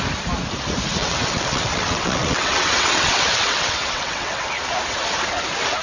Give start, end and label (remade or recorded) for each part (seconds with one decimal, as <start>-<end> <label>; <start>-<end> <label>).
0.0-1.0 recorded; 1.0-4.5 remade; 4.5-5.8 recorded